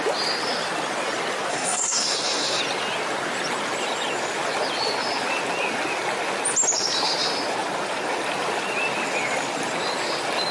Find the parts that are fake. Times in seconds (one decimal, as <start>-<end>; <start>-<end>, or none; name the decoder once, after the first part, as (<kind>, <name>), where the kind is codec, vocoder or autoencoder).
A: 1.5-2.6 (codec, SNAC)